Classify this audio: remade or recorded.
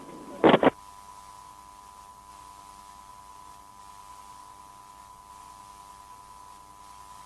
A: recorded